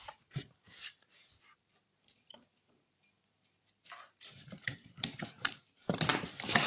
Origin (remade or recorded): remade